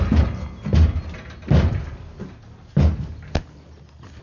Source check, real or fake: real